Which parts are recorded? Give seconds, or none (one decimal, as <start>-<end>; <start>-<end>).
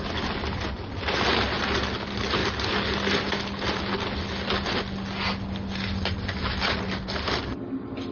0.0-8.1